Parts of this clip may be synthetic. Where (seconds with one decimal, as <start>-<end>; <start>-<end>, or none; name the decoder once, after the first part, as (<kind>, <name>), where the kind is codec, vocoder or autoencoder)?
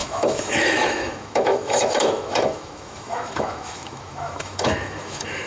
0.0-5.5 (autoencoder, DAC-VAE)